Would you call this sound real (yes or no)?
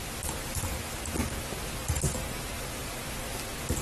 yes